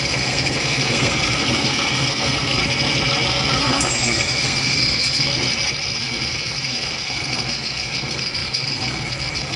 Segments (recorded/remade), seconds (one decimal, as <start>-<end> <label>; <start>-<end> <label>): 0.0-2.6 remade; 2.6-3.3 recorded; 3.3-5.3 remade; 5.3-6.0 recorded; 6.0-9.6 remade